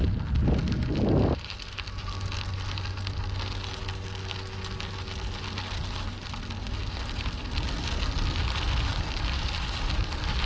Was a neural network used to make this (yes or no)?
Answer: no